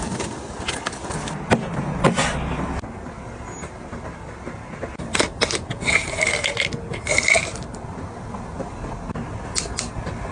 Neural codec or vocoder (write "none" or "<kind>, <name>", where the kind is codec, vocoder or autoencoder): none